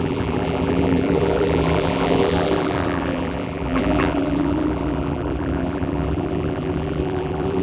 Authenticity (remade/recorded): remade